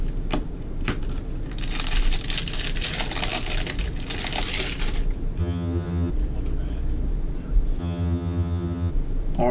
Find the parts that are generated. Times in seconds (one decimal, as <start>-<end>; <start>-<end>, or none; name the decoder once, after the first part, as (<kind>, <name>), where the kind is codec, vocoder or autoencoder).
5.4-6.1 (vocoder, HiFi-GAN); 7.8-8.9